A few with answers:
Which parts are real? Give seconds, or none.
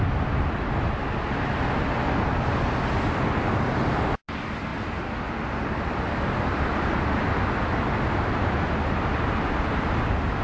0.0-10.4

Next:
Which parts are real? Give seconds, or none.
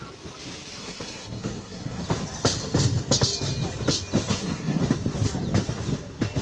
0.0-0.8; 2.0-4.3; 4.8-6.4